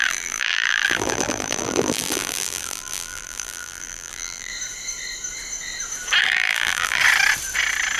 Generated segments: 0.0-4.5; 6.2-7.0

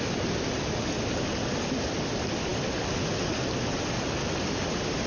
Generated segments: none

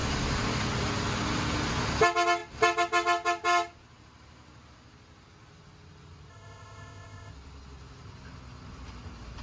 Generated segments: 6.3-7.3